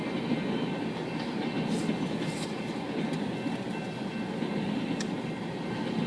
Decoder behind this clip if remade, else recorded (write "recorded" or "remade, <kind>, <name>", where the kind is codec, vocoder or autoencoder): recorded